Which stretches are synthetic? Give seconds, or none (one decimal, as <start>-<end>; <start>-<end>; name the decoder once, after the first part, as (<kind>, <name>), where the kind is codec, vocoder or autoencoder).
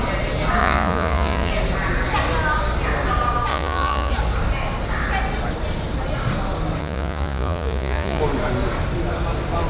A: 0.6-1.5 (vocoder, Vocos); 3.5-4.1; 6.8-8.2